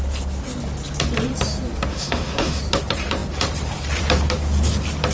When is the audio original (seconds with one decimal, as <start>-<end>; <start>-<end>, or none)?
0.0-1.9; 2.6-5.1